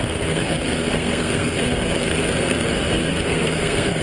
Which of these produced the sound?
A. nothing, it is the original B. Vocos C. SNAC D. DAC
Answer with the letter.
C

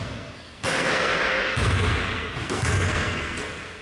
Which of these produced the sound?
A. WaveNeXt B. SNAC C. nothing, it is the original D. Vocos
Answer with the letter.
B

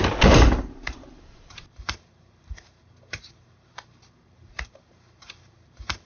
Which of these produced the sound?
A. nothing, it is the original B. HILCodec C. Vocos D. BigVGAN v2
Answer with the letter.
D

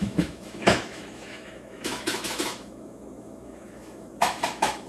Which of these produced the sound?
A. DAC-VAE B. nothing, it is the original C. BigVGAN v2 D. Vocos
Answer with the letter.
A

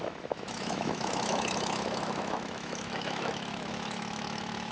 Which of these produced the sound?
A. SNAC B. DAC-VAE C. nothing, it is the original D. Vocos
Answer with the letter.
B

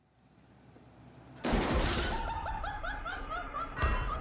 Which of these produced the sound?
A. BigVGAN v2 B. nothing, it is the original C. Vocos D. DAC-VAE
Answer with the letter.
A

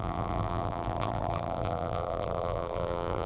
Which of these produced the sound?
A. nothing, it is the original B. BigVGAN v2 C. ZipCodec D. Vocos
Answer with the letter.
B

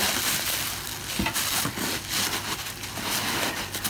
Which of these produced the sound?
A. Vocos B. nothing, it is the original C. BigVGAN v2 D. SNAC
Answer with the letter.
B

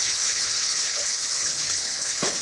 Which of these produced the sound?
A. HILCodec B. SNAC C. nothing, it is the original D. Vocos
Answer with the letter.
A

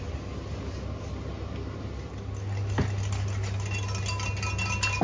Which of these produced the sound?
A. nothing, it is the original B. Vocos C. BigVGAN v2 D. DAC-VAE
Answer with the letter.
A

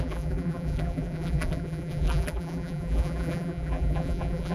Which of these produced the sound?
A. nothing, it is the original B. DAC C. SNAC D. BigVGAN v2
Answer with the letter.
D